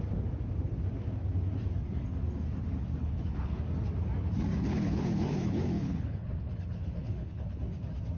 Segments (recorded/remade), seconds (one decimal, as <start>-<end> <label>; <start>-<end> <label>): 0.0-3.0 recorded; 3.0-3.6 remade; 3.6-4.6 recorded; 4.6-7.6 remade; 7.6-8.2 recorded